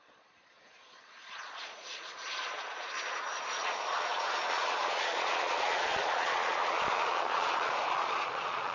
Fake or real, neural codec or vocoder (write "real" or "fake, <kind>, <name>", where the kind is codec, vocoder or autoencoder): fake, vocoder, Vocos